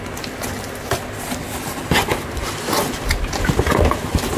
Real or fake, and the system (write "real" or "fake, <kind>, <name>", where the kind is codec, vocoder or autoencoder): real